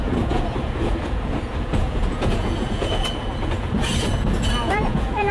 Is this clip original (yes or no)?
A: no